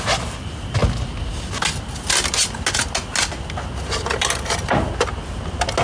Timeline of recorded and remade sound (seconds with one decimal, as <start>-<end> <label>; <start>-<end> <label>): 0.0-5.8 recorded